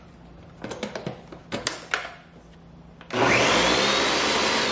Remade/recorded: recorded